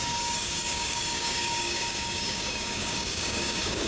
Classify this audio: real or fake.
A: fake